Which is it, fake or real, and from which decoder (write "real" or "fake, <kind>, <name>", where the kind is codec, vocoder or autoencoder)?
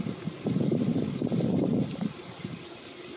fake, vocoder, BigVGAN v2